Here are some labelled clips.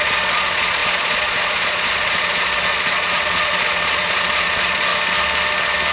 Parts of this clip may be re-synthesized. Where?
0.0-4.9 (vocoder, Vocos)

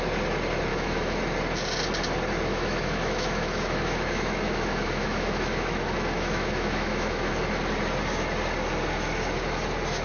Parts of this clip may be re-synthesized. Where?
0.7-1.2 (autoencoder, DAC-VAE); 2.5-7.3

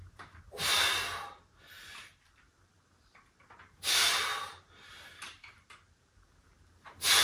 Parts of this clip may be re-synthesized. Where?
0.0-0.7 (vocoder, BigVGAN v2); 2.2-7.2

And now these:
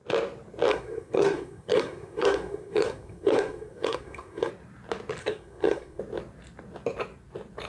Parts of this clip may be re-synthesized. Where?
0.7-4.5 (codec, SNAC); 5.2-6.0

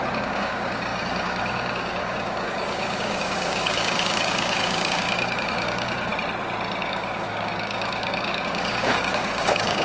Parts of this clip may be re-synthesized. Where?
0.0-6.1 (codec, DAC); 6.8-9.8

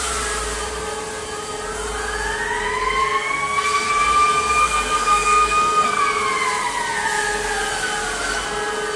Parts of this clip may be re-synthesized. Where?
3.0-3.9 (codec, SNAC); 4.6-6.0

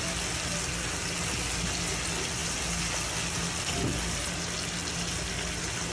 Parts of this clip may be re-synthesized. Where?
none

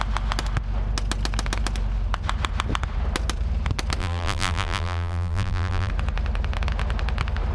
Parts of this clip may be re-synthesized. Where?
4.0-5.9 (vocoder, BigVGAN v2)